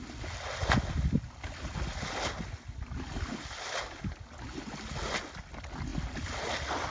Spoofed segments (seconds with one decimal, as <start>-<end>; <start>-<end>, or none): none